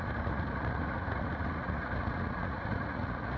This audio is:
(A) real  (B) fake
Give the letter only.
B